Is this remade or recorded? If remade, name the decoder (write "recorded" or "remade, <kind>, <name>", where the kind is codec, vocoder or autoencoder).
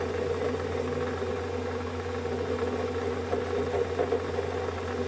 recorded